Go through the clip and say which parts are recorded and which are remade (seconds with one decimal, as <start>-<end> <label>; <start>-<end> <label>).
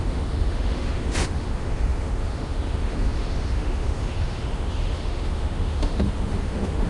0.0-6.9 remade